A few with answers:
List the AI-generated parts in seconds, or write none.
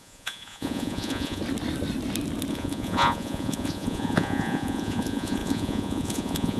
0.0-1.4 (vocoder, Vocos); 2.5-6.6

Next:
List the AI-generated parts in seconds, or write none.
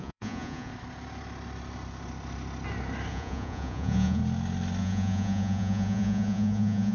0.0-0.7 (vocoder, Vocos); 3.1-4.2; 4.8-6.9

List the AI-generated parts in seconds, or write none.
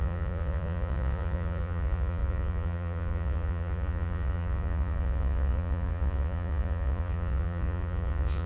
0.0-8.5 (vocoder, Vocos)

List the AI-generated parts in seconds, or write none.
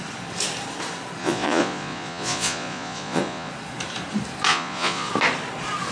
1.2-3.5 (vocoder, Vocos); 4.5-5.1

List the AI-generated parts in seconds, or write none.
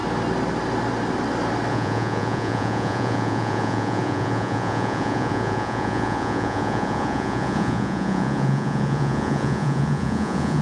1.7-10.6 (vocoder, Vocos)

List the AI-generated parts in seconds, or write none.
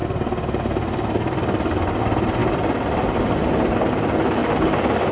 none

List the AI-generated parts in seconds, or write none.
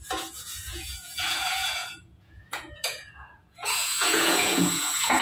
0.0-5.2 (vocoder, Vocos)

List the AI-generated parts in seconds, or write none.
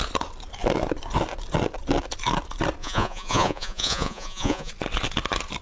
2.8-4.7 (vocoder, Vocos)